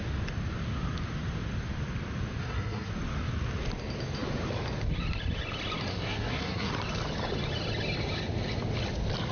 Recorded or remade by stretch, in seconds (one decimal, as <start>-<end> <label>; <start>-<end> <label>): 0.0-2.4 recorded; 2.4-2.9 remade; 2.9-5.9 recorded; 5.9-6.7 remade; 6.7-9.3 recorded